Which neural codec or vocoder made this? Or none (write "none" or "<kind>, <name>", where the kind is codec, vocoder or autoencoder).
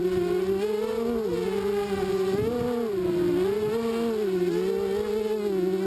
none